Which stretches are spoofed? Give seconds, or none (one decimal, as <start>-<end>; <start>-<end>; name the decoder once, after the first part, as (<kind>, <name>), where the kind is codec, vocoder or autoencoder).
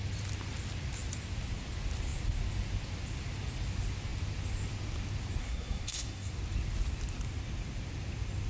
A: 5.4-6.3 (codec, SNAC)